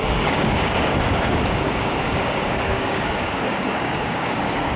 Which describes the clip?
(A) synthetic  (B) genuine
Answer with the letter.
A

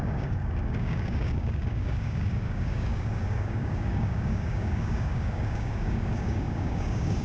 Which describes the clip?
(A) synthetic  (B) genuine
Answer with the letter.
A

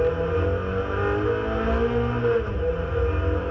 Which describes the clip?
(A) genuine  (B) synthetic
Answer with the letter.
A